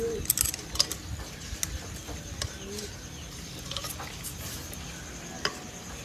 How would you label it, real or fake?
real